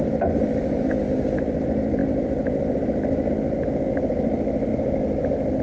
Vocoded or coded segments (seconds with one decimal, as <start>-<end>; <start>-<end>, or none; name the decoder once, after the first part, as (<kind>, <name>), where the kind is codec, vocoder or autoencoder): none

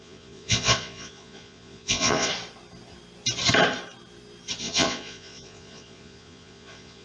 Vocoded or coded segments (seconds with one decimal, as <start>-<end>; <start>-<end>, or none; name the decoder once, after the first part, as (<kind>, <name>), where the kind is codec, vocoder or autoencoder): 0.0-2.3 (vocoder, Vocos); 4.6-7.0

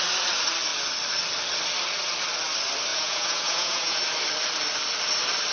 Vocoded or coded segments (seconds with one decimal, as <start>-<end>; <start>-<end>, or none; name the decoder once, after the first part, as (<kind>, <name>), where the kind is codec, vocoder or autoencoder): 2.9-4.0 (vocoder, Vocos)

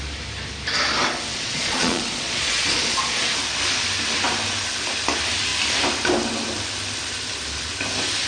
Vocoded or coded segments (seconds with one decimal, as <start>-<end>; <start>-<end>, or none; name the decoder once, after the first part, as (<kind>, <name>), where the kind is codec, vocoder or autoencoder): 1.3-3.3 (vocoder, Vocos)

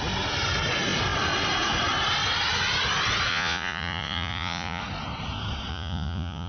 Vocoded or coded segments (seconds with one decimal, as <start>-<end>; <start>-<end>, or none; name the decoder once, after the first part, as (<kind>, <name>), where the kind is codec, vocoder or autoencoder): 3.3-4.8 (vocoder, Vocos); 5.7-6.5

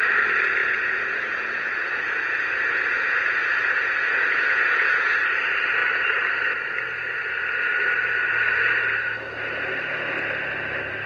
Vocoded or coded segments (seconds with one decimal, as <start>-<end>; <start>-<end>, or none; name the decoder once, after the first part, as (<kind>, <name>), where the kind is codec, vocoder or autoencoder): 0.6-5.2 (vocoder, Vocos)

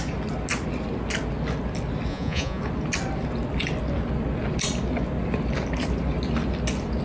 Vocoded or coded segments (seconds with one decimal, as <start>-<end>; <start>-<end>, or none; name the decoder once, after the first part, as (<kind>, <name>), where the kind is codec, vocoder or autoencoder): 2.1-2.6 (vocoder, Vocos)

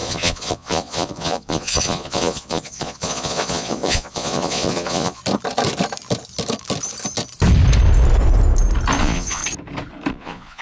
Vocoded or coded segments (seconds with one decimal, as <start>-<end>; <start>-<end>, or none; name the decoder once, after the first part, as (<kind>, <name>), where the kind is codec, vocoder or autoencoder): 0.0-5.2 (vocoder, Vocos); 9.0-9.4; 10.1-10.6